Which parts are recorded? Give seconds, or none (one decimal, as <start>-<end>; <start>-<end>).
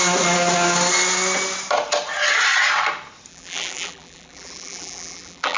0.0-3.3